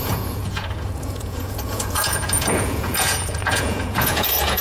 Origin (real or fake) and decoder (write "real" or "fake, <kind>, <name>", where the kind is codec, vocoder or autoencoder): fake, vocoder, Vocos